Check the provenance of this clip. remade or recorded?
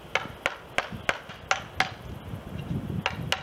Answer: recorded